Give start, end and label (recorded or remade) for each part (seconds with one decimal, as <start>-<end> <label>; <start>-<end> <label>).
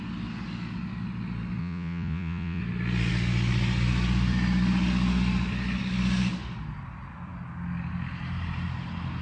0.0-1.6 recorded; 1.6-2.6 remade; 2.6-9.2 recorded